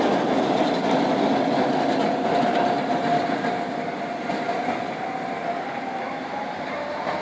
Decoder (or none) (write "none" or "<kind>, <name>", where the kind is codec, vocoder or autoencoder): none